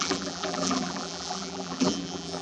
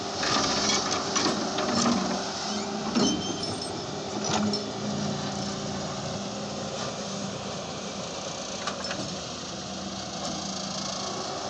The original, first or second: second